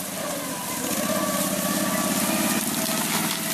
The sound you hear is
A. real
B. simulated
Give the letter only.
A